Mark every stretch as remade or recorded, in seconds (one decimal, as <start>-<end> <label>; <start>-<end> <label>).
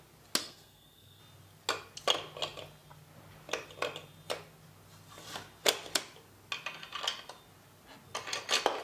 0.0-0.4 recorded; 0.4-1.2 remade; 1.2-8.8 recorded